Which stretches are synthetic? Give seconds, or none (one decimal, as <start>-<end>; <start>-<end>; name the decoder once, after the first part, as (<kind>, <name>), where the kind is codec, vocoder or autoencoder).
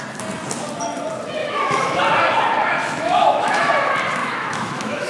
1.4-2.0 (autoencoder, DAC-VAE); 2.8-3.7; 4.2-5.1